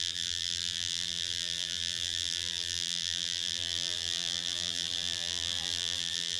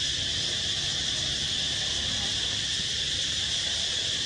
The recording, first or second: second